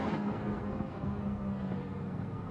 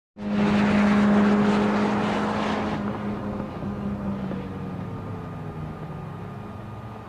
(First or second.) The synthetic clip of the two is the first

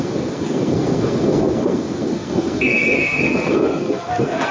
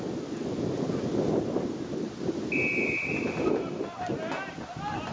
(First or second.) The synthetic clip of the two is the first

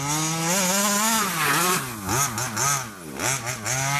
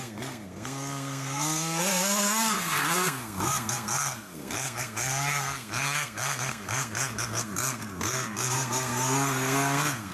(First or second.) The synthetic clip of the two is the second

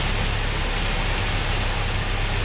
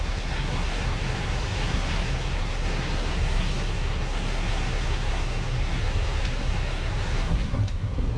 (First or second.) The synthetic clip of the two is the second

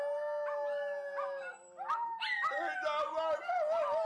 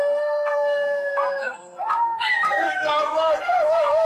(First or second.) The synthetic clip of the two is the second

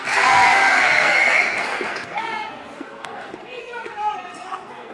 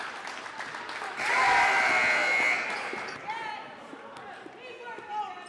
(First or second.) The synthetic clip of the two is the first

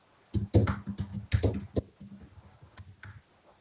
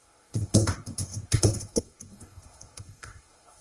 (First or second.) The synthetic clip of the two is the second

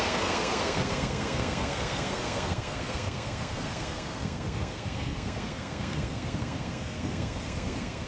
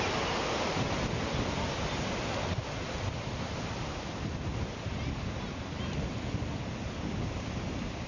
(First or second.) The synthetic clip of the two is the first